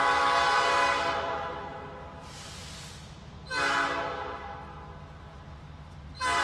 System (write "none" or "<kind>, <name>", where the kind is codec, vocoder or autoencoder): none